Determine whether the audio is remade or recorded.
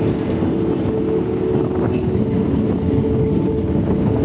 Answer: recorded